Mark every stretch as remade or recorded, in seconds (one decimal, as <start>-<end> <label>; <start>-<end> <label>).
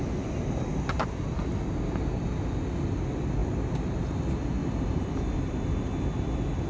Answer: 0.0-4.6 recorded; 4.6-5.4 remade; 5.4-6.7 recorded